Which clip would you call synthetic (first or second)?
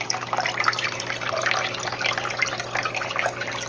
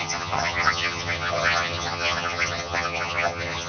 second